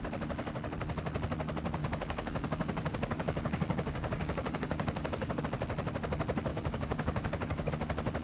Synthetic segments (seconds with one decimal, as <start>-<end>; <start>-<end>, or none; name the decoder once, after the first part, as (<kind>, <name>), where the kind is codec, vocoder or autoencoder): 1.8-5.4 (codec, DAC); 6.5-7.7